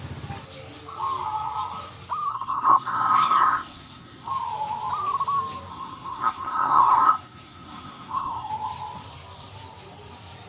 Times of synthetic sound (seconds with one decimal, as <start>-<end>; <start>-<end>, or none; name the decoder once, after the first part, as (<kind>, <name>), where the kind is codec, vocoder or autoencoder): 2.3-4.3 (codec, SNAC); 5.7-8.5